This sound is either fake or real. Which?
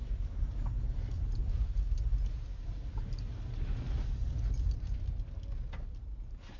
real